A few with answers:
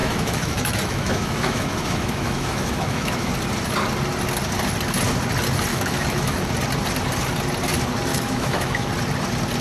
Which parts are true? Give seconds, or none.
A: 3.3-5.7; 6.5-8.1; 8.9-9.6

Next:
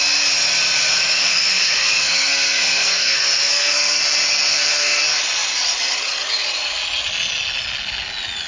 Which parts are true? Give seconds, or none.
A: 0.0-0.8; 4.0-4.5; 5.0-8.5

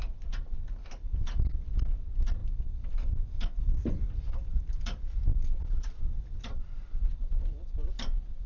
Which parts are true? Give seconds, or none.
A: 0.0-2.4; 3.1-8.5

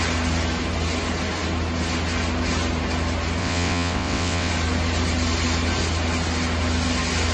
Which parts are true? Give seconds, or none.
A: 0.0-3.4; 4.5-7.3

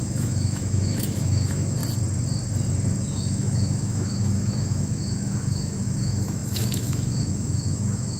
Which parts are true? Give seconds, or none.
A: 1.8-3.0

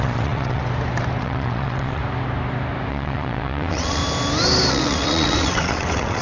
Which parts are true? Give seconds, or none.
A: 0.6-1.2; 2.0-2.9; 4.0-4.7

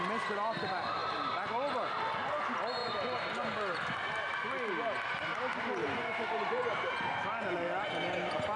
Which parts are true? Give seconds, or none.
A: 0.0-5.8; 6.9-8.6

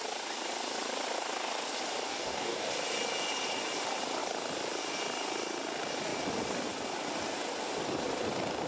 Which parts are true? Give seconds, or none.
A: 0.0-2.1; 2.7-8.7